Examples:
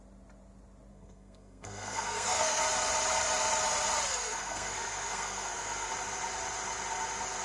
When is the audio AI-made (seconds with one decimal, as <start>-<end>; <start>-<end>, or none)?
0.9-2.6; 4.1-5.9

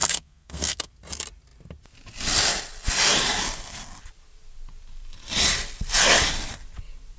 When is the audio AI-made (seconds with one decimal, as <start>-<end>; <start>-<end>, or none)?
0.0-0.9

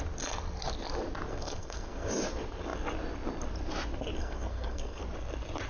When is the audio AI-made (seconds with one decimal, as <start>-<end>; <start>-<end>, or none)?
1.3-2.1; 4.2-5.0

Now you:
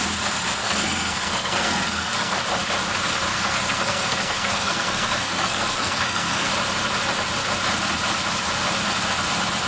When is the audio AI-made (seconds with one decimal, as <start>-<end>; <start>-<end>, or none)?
0.6-2.4; 3.3-6.5

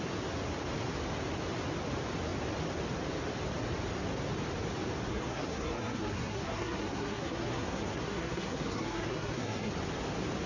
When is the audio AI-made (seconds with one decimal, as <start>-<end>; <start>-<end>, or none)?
5.1-9.7

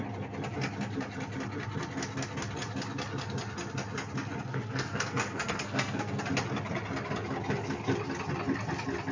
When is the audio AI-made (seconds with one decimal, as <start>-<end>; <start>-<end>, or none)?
4.5-6.2